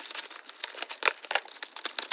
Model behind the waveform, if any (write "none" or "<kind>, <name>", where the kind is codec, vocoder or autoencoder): none